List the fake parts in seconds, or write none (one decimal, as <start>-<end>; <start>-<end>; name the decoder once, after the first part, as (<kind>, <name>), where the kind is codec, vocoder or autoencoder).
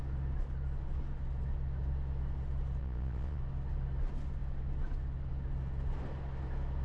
2.8-3.4 (vocoder, Vocos)